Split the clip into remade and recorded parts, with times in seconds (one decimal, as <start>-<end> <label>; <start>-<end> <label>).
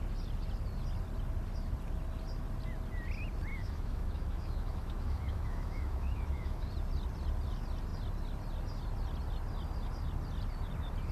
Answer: 0.0-3.5 recorded; 3.5-6.7 remade; 6.7-11.1 recorded